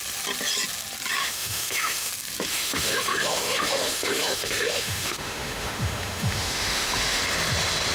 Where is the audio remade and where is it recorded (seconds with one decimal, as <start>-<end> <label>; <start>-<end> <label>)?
0.0-1.2 recorded; 1.2-2.1 remade; 2.1-2.5 recorded; 2.5-7.2 remade; 7.2-7.9 recorded